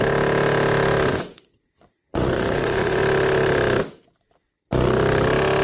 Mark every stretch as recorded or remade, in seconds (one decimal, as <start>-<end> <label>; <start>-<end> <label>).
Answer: 0.0-1.1 recorded; 1.1-3.0 remade; 3.0-5.6 recorded